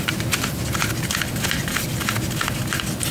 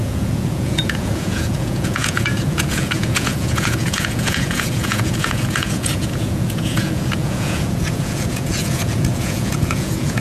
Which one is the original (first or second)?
first